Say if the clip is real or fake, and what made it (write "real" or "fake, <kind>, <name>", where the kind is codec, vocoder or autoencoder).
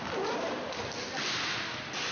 real